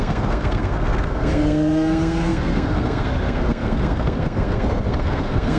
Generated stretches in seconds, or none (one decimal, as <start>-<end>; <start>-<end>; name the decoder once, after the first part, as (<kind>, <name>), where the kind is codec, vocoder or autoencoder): 0.0-5.6 (codec, SNAC)